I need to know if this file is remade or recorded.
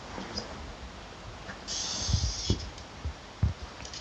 recorded